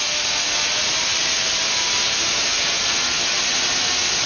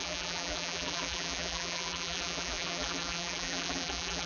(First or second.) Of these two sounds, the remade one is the second